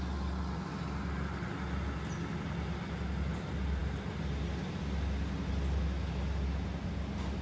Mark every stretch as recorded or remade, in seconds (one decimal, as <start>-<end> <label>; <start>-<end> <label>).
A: 0.0-7.4 recorded